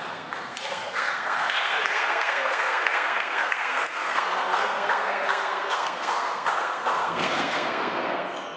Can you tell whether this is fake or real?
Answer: fake